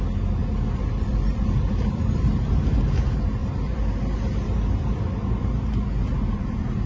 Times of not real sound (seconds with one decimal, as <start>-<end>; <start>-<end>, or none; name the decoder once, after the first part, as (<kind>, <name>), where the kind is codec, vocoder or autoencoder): 0.4-2.5 (vocoder, BigVGAN v2); 3.4-5.1